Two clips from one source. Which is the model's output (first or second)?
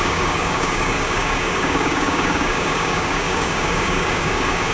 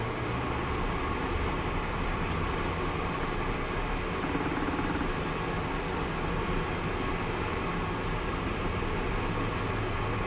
first